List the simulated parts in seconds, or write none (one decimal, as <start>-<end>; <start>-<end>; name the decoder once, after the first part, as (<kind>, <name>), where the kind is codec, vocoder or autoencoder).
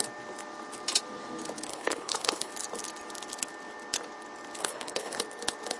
1.7-2.5 (codec, HILCodec); 4.6-5.2